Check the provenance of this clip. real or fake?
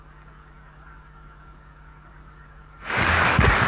fake